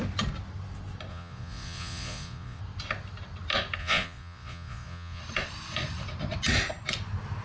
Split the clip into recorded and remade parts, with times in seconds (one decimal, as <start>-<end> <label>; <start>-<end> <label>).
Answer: 0.0-1.1 recorded; 1.1-2.6 remade; 2.6-3.8 recorded; 3.8-5.2 remade; 5.2-7.4 recorded